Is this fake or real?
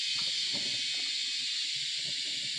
real